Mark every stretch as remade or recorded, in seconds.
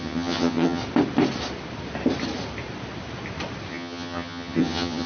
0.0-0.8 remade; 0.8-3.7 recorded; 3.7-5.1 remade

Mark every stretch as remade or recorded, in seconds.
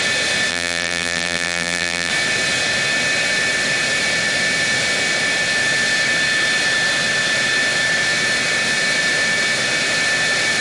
0.0-0.5 recorded; 0.5-2.1 remade; 2.1-10.6 recorded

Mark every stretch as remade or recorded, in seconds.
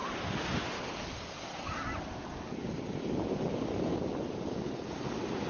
0.0-5.5 recorded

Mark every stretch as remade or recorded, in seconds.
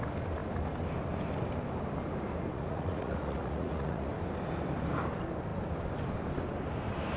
0.0-2.5 recorded; 2.5-4.1 remade; 4.1-7.2 recorded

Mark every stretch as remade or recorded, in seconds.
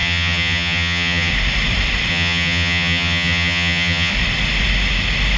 0.0-1.3 remade; 1.3-2.1 recorded; 2.1-4.1 remade; 4.1-5.4 recorded